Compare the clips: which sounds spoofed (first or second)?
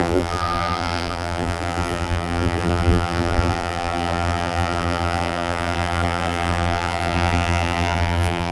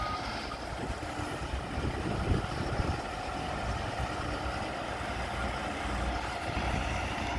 first